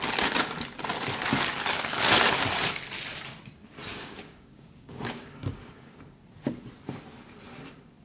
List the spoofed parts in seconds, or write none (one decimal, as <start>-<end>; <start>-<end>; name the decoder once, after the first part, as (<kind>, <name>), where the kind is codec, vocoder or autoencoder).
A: 3.9-6.0 (codec, DAC)